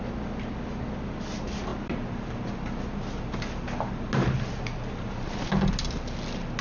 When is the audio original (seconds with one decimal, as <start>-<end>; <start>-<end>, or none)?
0.0-6.6